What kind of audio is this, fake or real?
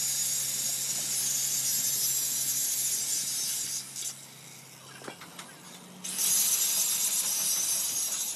real